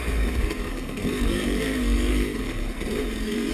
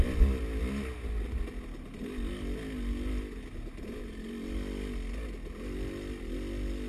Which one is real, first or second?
second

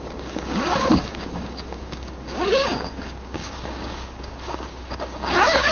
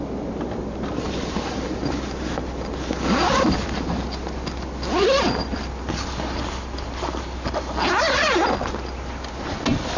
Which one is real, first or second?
second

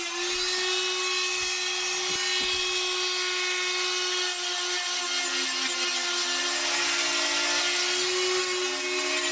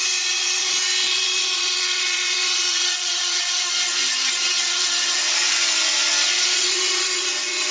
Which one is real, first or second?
first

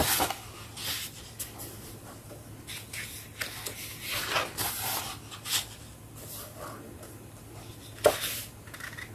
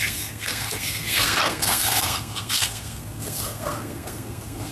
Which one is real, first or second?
first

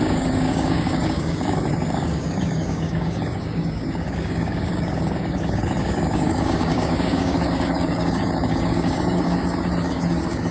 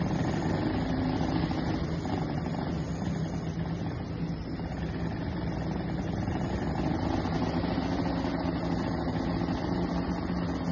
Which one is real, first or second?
second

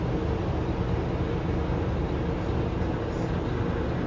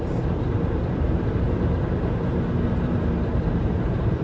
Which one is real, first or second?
first